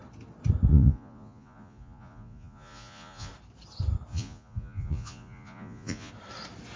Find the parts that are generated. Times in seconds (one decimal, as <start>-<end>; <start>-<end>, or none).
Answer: 0.7-3.3; 4.1-6.1